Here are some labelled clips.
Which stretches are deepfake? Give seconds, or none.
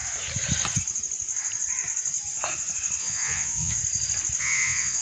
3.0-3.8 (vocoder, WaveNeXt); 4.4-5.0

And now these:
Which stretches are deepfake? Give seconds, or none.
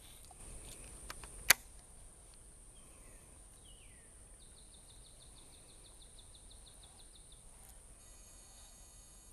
8.0-9.3 (autoencoder, DAC-VAE)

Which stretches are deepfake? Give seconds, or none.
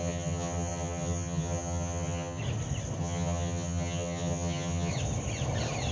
0.0-2.4 (vocoder, HiFi-GAN); 3.0-4.9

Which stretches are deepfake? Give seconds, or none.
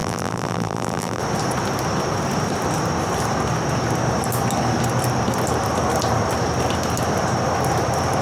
0.0-1.2 (vocoder, BigVGAN v2)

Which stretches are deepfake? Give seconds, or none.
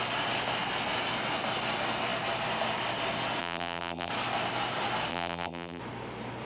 3.4-4.1 (vocoder, BigVGAN v2); 5.1-5.8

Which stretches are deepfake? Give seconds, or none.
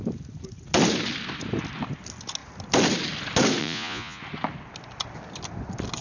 3.6-4.2 (vocoder, Vocos)